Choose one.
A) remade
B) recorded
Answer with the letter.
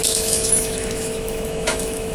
A